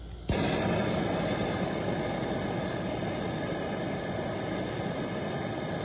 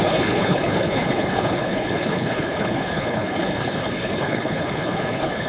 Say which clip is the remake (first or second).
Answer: second